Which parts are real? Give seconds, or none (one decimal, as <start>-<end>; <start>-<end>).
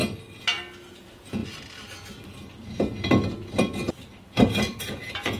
0.0-0.9; 1.4-4.6